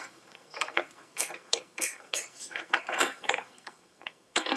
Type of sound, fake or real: fake